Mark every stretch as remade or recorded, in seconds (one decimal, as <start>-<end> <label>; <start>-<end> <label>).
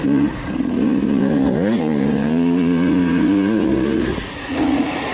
0.0-5.1 remade